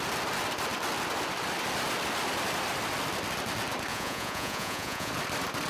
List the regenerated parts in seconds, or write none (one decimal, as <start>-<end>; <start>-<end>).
3.9-5.1

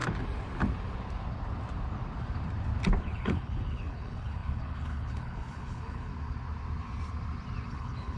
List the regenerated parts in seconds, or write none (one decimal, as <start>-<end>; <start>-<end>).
3.0-6.1; 7.7-8.2

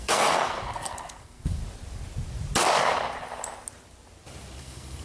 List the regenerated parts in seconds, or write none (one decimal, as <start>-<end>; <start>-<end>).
0.0-1.6; 4.6-5.0